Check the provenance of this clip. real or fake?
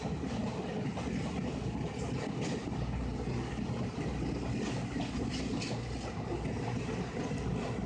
real